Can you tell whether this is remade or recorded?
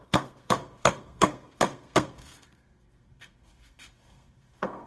remade